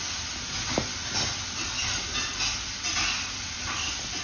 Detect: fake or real real